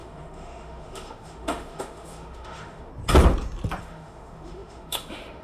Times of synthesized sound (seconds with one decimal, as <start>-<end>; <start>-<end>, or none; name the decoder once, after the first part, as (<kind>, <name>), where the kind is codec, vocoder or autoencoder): 0.0-2.9 (autoencoder, DAC-VAE); 3.8-5.4